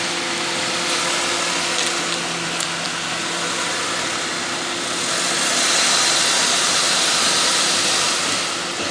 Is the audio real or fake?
real